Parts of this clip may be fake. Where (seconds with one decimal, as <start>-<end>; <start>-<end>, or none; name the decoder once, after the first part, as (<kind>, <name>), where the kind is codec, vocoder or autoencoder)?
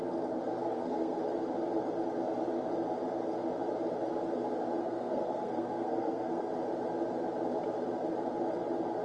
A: 0.4-1.2 (codec, SNAC); 4.8-6.5